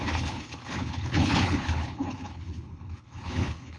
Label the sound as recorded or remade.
remade